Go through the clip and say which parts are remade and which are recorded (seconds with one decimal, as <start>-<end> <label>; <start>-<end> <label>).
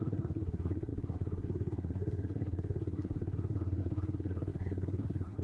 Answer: 0.0-5.4 remade